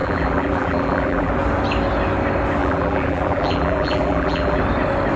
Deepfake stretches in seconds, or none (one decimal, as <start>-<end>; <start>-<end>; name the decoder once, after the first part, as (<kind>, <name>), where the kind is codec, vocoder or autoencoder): 0.0-1.3 (vocoder, BigVGAN v2); 2.6-4.6